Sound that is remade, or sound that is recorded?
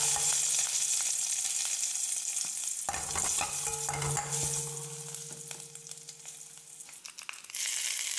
recorded